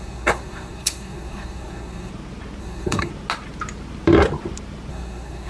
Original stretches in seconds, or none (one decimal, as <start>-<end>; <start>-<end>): 2.1-2.6; 3.1-4.9